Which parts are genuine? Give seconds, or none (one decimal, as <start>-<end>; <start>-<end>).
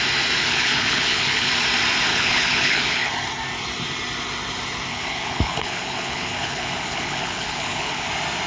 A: 0.0-0.4; 1.5-2.1; 3.1-4.9; 8.1-8.5